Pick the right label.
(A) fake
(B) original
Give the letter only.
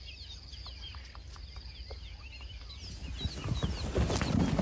B